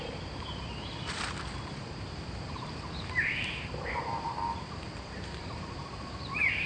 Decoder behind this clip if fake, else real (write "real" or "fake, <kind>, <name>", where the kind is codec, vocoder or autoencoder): fake, vocoder, BigVGAN v2